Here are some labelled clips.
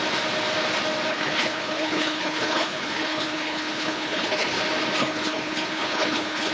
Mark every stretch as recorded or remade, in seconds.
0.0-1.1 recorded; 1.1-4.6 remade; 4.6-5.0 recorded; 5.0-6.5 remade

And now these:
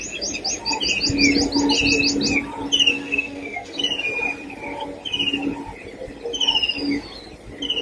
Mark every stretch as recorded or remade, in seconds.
0.0-2.9 recorded; 2.9-3.8 remade; 3.8-7.8 recorded

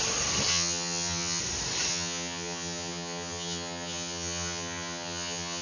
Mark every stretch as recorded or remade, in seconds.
0.0-0.5 recorded; 0.5-1.4 remade; 1.4-1.9 recorded; 1.9-5.6 remade